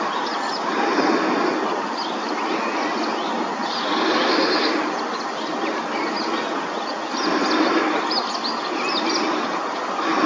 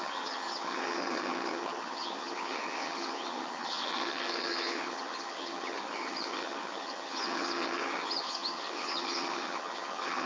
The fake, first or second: second